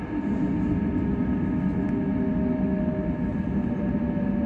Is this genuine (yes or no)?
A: yes